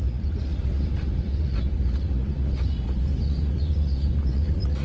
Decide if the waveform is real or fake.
fake